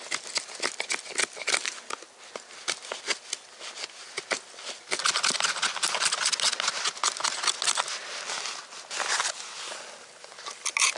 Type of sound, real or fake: real